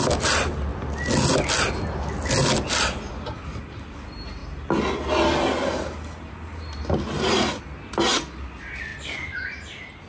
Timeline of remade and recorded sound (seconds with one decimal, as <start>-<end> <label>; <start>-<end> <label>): 0.0-10.1 recorded